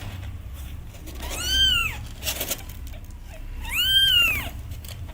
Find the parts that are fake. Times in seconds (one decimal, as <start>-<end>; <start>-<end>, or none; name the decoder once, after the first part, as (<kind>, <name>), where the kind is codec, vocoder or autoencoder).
0.0-0.8 (vocoder, BigVGAN v2); 4.0-5.1